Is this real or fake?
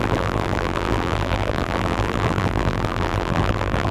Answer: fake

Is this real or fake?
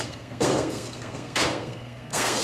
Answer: fake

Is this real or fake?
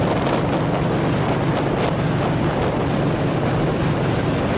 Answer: real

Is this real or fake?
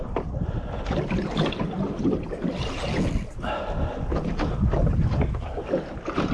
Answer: real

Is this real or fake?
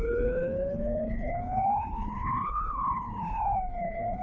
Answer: fake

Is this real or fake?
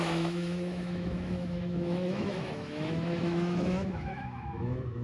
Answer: fake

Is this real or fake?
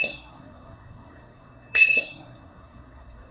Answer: fake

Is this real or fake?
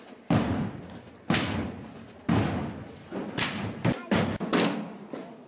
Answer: fake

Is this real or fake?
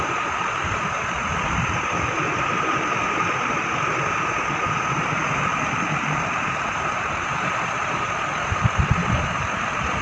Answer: fake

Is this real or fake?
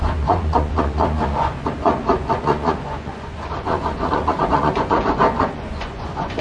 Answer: fake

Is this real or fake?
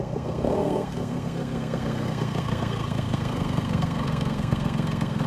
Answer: fake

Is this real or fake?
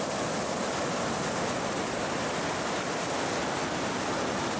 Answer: real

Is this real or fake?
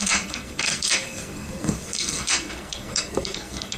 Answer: fake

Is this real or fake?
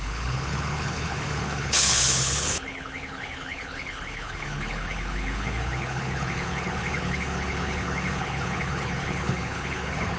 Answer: fake